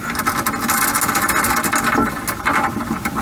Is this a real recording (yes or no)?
yes